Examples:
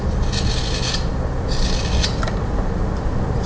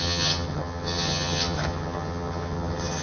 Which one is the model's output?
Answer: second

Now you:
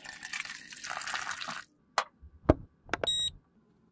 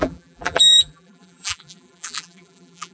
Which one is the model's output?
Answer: second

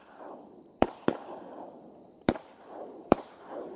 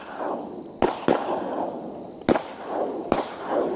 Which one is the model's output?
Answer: first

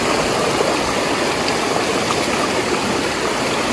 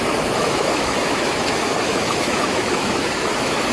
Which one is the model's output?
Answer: second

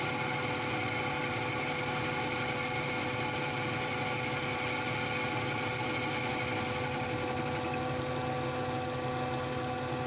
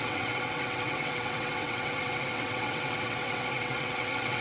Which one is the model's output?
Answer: second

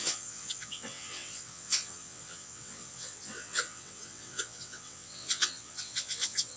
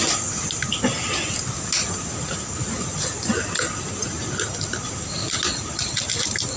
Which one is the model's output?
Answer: first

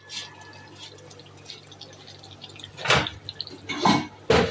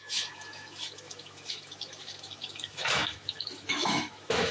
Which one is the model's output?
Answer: second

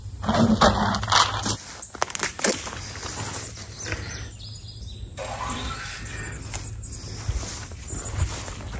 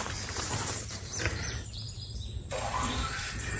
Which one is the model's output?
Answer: second